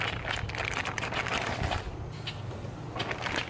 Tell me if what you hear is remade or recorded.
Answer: recorded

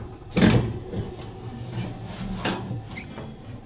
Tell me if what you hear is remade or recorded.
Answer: recorded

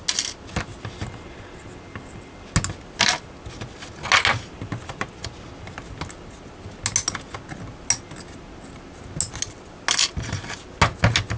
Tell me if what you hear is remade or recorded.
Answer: recorded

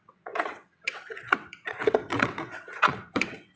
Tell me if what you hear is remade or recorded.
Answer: remade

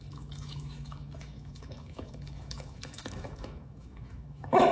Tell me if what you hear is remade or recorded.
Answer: remade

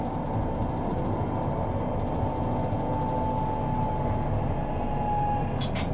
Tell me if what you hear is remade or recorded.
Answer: recorded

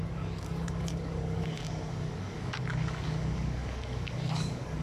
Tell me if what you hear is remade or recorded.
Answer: remade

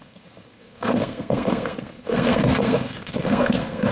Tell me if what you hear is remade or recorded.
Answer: remade